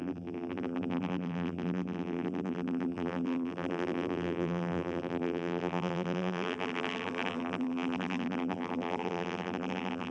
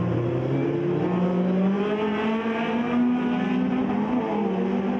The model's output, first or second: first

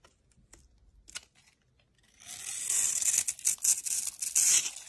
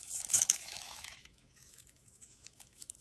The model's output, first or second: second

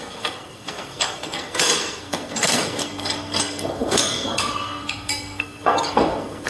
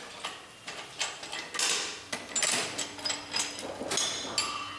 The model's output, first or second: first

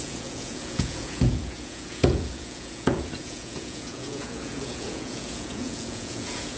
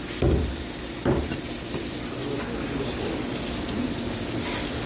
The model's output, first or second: first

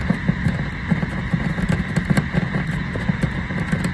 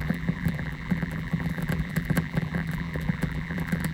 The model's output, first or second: second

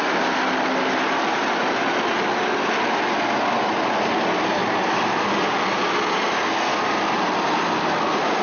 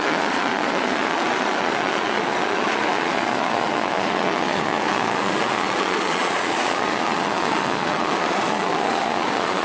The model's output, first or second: second